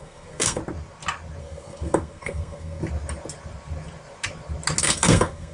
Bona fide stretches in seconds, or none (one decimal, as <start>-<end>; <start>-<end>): 0.6-1.4; 2.8-4.8